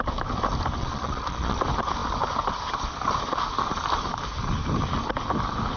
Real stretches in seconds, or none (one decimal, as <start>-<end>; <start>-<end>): 0.0-0.8; 1.6-5.8